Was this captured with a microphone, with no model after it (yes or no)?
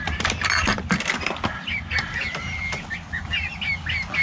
yes